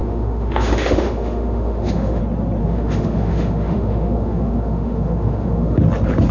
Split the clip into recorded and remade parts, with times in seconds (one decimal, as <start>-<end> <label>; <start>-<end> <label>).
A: 0.0-2.2 remade; 2.2-2.6 recorded; 2.6-5.8 remade; 5.8-6.3 recorded